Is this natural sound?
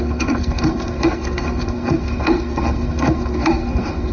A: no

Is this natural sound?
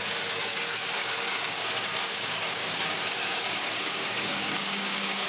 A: no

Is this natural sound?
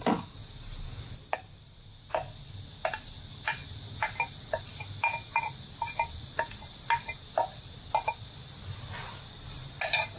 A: yes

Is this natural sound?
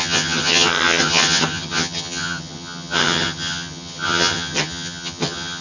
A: no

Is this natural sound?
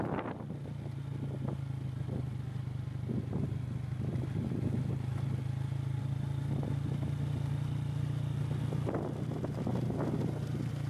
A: yes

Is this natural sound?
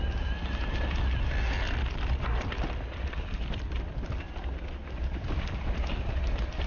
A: yes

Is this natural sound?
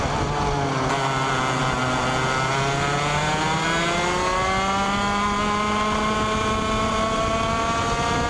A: yes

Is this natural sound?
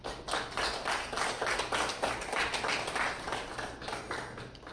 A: yes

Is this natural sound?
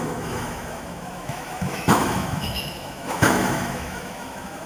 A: no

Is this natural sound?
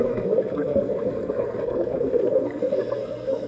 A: no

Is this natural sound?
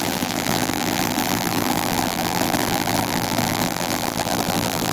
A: no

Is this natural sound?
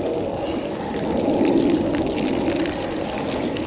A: yes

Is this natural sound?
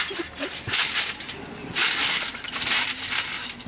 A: no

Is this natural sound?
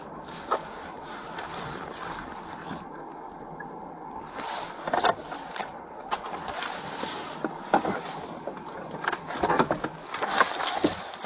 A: yes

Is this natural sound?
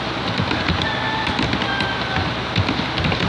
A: yes